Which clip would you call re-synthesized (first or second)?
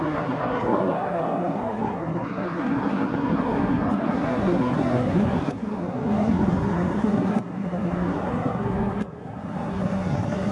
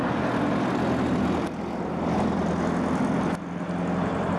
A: first